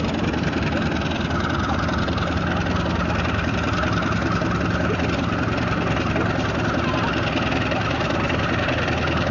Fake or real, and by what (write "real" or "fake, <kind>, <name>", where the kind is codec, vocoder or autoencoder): real